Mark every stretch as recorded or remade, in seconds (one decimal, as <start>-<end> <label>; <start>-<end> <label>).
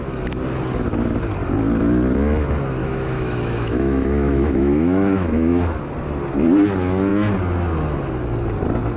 0.0-2.8 recorded; 2.8-5.8 remade; 5.8-9.0 recorded